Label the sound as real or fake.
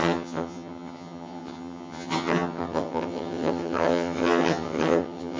fake